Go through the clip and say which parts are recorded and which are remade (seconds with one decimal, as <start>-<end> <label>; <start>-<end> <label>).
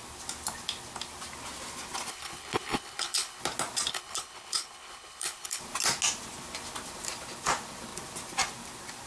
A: 0.0-2.1 recorded; 2.1-3.4 remade; 3.4-3.9 recorded; 3.9-5.6 remade; 5.6-9.1 recorded